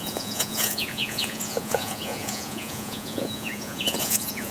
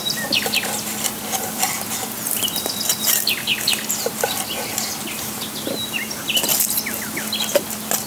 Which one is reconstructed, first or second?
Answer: first